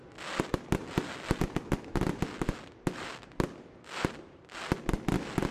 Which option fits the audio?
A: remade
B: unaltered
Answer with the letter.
B